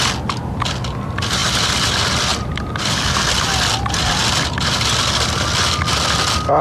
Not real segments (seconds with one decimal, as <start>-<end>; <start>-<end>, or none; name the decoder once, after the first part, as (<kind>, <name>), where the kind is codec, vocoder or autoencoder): 1.4-1.9 (vocoder, BigVGAN v2); 2.3-2.9